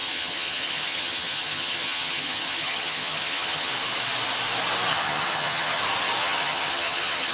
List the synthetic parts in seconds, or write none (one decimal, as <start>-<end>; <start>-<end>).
0.0-3.7; 4.9-5.8; 6.2-7.3